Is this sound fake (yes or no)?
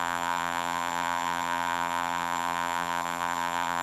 yes